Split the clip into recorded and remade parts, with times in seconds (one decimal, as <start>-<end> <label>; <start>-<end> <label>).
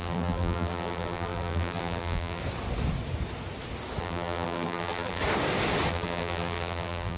0.0-2.4 remade; 2.4-4.0 recorded; 4.0-5.2 remade; 5.2-5.9 recorded; 5.9-7.2 remade